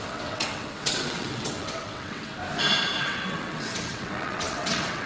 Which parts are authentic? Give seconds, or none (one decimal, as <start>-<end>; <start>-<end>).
2.3-3.0